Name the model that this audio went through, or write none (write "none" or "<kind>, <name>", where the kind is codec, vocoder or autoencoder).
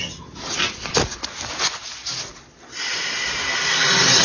none